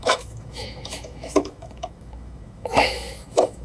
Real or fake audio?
fake